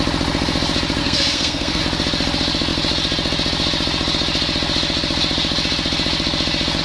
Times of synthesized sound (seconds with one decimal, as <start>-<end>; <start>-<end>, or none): 1.0-1.8